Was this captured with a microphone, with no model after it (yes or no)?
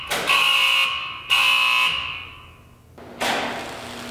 yes